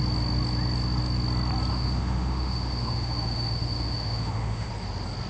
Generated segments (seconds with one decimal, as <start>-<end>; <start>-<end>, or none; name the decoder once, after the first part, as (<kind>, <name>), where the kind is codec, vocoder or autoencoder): 1.7-4.7 (autoencoder, DAC-VAE)